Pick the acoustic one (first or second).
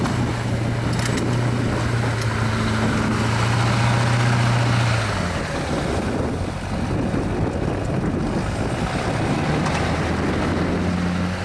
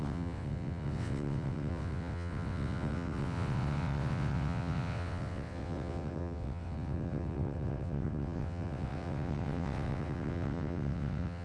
first